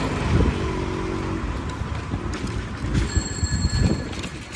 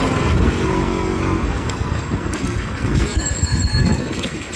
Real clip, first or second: first